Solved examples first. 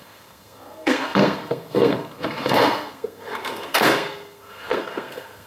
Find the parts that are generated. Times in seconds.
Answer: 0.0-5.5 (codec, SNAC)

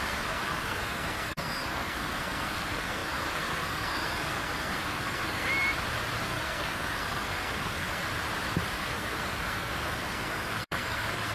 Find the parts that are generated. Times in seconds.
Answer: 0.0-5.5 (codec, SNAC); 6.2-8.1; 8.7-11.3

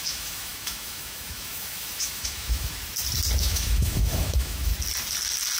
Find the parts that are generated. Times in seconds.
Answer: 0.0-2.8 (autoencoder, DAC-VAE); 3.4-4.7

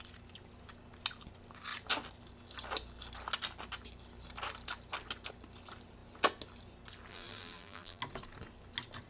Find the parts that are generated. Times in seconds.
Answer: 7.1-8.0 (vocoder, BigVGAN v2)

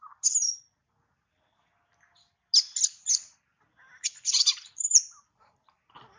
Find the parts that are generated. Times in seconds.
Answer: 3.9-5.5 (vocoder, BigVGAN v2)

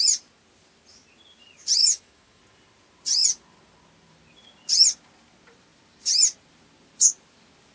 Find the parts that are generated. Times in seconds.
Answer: 1.8-2.4 (autoencoder, DAC-VAE)